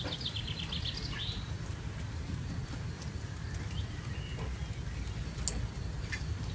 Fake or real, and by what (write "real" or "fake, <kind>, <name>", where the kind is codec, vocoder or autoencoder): real